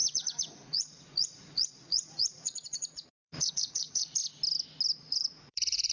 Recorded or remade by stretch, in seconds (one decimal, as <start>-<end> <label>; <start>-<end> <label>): 0.0-4.2 remade; 4.2-4.9 recorded; 4.9-5.9 remade